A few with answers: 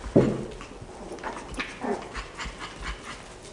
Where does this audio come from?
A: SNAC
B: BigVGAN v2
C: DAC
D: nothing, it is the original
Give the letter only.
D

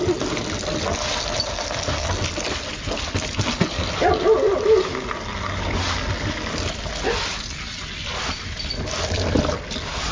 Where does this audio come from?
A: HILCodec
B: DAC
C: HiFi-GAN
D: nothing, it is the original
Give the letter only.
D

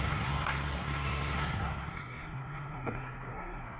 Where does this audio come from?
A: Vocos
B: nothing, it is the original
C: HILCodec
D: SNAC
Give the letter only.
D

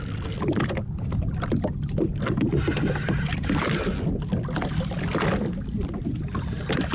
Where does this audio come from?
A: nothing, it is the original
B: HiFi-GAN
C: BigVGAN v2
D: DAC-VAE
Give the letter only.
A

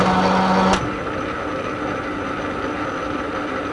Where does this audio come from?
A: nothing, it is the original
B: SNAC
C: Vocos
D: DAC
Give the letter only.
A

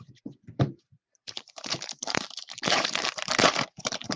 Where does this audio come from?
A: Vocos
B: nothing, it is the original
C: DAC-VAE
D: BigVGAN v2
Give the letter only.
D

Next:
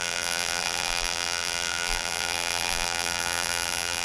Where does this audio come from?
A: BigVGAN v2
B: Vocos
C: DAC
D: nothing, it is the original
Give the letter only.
A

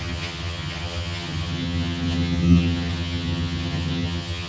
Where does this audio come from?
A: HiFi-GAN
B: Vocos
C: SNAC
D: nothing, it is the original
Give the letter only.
A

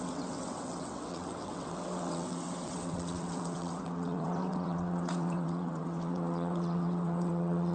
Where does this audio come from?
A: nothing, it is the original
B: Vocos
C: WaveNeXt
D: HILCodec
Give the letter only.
C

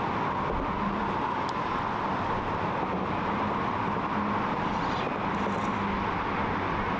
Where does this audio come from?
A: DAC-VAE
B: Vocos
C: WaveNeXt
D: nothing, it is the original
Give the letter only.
D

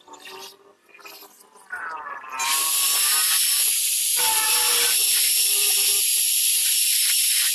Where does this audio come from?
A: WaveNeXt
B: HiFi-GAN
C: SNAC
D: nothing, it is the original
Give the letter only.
D